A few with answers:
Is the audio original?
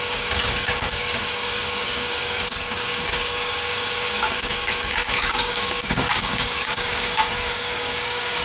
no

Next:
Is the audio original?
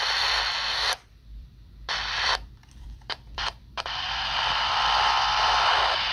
no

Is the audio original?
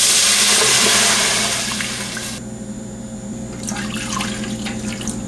yes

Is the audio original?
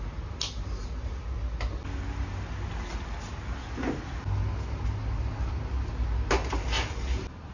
yes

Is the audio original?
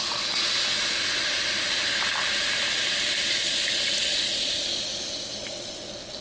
yes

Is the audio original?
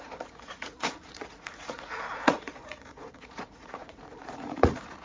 no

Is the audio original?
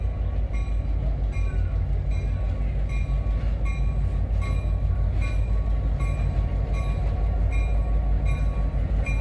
yes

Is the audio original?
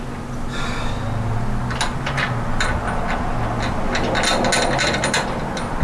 yes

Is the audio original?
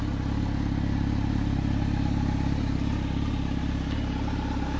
yes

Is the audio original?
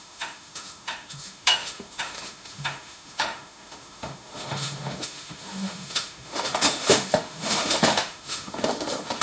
no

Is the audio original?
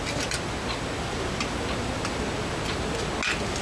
yes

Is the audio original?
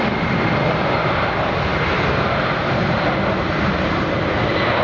yes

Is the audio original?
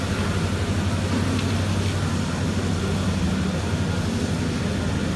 yes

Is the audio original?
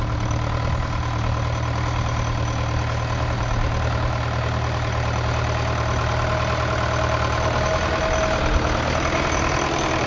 yes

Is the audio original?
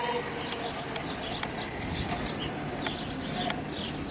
yes